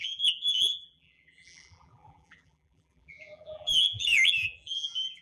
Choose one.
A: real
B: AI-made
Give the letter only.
B